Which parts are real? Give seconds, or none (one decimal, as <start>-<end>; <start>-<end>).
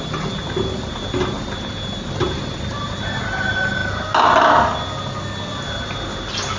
0.0-6.6